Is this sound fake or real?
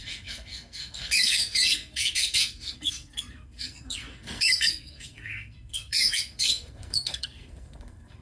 fake